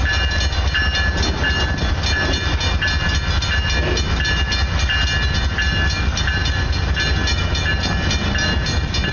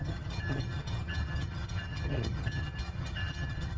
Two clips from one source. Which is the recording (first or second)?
first